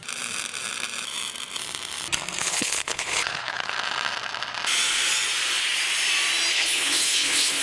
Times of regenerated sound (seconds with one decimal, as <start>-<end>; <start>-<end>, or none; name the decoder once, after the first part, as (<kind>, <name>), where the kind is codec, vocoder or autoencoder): 2.4-3.7 (codec, HILCodec); 6.5-7.6